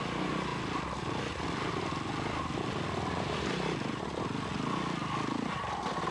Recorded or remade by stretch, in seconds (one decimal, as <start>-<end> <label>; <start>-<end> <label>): 0.0-6.1 recorded

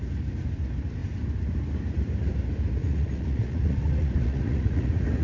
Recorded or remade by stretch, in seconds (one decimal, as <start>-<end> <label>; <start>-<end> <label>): 0.0-2.8 recorded; 2.8-5.2 remade

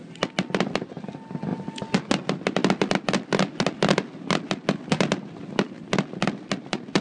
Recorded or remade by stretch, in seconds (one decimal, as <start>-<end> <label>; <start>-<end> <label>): 0.0-7.0 recorded

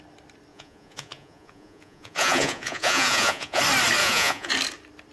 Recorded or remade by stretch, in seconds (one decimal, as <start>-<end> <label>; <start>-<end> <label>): 0.0-0.5 recorded; 0.5-3.6 remade; 3.6-4.0 recorded; 4.0-4.5 remade; 4.5-5.1 recorded

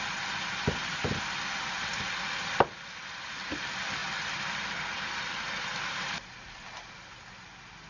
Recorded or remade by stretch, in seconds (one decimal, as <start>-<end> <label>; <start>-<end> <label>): 0.0-7.9 recorded

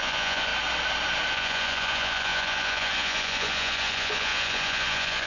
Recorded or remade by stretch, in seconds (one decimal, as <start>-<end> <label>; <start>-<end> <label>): 0.0-0.5 remade; 0.5-1.3 recorded; 1.3-5.3 remade